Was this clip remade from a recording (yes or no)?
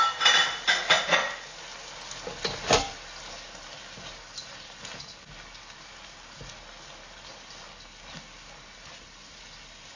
no